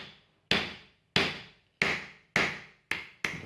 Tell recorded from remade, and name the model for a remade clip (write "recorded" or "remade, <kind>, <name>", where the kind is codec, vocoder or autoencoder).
recorded